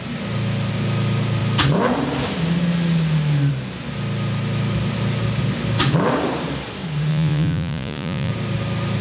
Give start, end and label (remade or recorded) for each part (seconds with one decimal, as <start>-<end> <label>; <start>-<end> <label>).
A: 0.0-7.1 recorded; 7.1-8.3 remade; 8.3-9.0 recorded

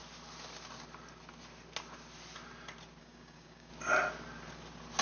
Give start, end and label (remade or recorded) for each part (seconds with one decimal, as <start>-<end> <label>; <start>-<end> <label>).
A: 0.0-3.0 recorded; 3.0-3.7 remade; 3.7-5.0 recorded

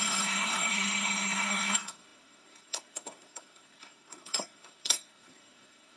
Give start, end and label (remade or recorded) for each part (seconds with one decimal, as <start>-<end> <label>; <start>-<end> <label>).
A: 0.0-6.0 remade

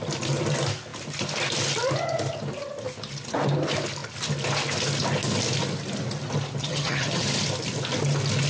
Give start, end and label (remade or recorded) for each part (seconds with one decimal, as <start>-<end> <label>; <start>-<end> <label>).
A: 0.0-6.6 recorded; 6.6-7.2 remade; 7.2-8.5 recorded

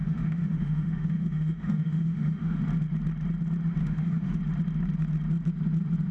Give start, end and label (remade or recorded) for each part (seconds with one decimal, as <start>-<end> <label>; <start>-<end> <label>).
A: 0.0-2.6 remade; 2.6-3.8 recorded; 3.8-4.4 remade; 4.4-6.1 recorded